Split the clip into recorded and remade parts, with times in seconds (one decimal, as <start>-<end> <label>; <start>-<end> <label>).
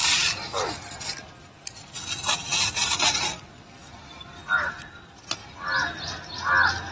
0.0-6.9 recorded